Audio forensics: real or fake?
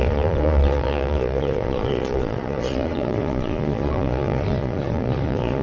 fake